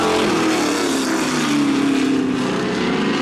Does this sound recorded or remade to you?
recorded